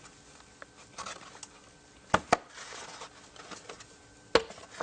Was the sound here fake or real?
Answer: real